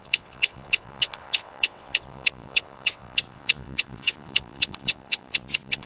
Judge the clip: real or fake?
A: fake